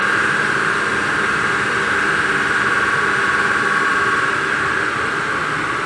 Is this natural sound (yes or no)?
no